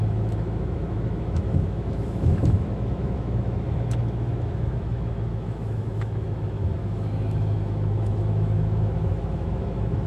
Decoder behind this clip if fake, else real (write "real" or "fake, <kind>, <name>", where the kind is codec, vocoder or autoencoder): fake, autoencoder, DAC-VAE